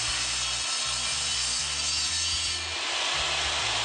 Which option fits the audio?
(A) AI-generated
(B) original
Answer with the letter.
B